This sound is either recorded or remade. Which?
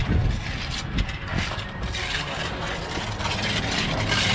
recorded